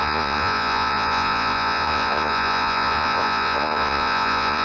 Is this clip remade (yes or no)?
yes